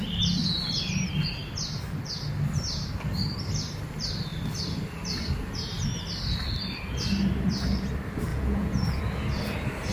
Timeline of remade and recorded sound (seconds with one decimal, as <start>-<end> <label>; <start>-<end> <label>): 0.0-8.3 recorded; 8.3-9.0 remade; 9.0-9.9 recorded